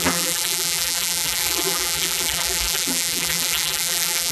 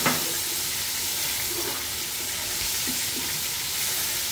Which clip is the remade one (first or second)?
first